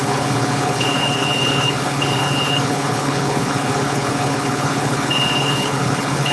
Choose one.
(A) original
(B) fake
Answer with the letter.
B